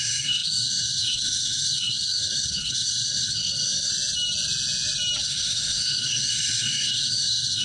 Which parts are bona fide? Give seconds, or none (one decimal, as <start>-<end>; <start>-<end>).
3.9-5.2

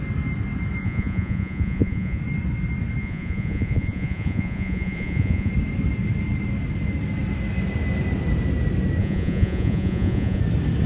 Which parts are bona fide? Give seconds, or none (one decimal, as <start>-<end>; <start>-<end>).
0.0-0.8; 2.2-3.0; 5.5-9.0; 10.4-10.9

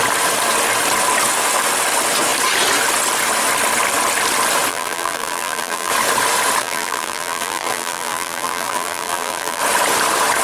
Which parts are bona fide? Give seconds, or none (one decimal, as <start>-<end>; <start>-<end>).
0.0-4.7; 5.9-6.6; 9.6-10.4